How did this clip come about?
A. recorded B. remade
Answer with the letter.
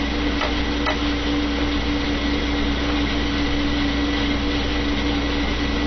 A